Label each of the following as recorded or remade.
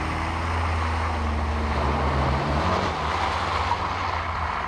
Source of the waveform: recorded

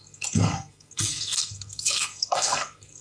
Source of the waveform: remade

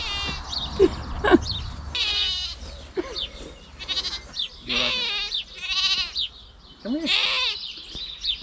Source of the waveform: recorded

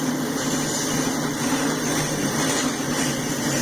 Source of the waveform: recorded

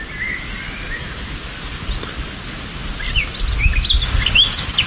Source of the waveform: recorded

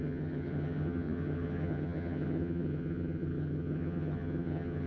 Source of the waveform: remade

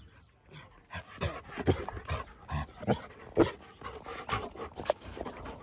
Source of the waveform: recorded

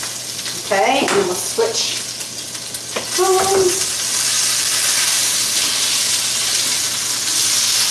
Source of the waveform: recorded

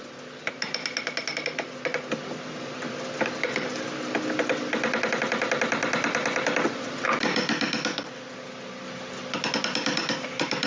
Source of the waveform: recorded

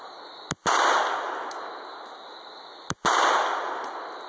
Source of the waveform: recorded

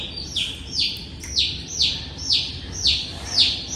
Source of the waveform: recorded